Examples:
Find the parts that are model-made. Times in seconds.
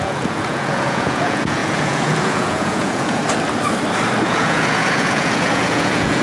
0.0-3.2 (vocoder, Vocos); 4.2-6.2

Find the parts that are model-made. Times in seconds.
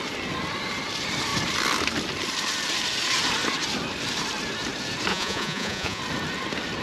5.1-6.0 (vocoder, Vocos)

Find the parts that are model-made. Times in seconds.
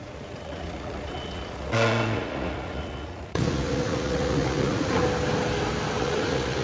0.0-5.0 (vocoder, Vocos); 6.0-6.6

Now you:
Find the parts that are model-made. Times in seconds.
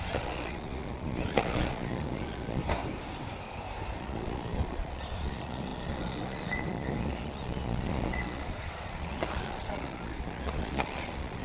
0.0-2.6 (vocoder, Vocos); 4.0-11.4